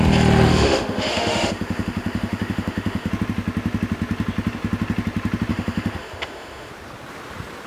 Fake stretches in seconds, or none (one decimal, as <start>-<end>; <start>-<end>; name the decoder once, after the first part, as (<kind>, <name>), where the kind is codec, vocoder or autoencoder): 0.5-3.1 (autoencoder, DAC-VAE); 5.5-6.7